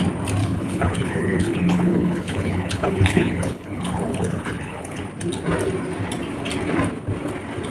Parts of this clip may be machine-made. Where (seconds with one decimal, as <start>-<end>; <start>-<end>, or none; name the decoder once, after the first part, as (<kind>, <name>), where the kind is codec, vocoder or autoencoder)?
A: 0.4-5.0 (codec, HILCodec)